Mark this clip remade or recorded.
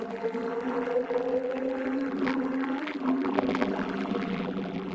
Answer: remade